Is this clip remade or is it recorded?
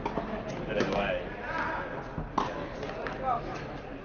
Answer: recorded